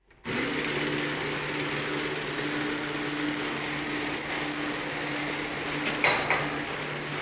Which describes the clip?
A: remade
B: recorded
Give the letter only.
B